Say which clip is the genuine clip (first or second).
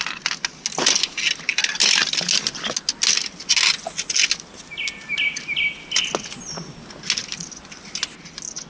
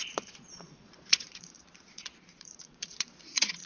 first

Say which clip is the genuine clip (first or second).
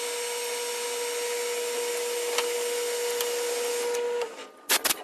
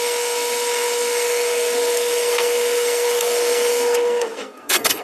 first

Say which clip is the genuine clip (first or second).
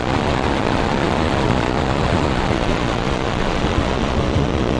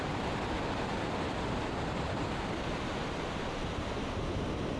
second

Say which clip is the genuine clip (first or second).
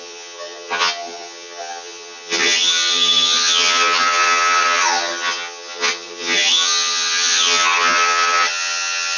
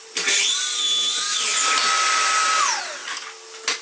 second